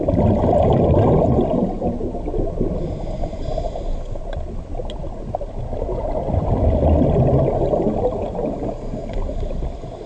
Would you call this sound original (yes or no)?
yes